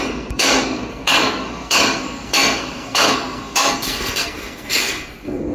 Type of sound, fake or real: fake